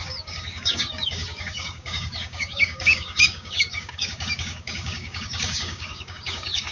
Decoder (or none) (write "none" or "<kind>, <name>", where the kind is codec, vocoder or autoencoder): codec, DAC